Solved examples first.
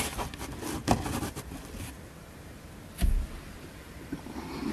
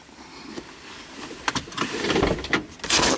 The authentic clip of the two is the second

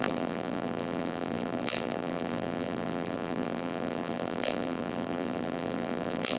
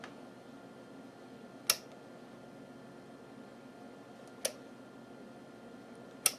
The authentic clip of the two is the second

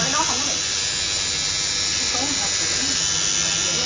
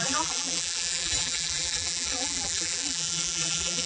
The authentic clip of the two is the first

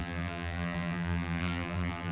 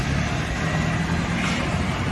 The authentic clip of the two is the second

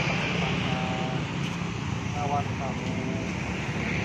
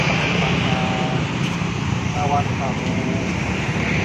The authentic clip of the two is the first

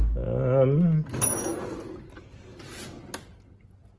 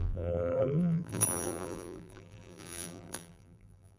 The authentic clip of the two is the first